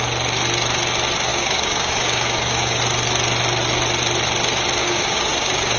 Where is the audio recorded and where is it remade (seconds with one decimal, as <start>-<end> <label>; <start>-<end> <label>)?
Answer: 0.0-1.3 recorded; 1.3-2.8 remade; 2.8-4.8 recorded; 4.8-5.8 remade